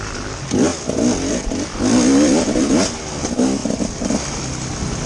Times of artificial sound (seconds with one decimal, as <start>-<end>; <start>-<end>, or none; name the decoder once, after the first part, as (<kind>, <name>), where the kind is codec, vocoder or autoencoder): none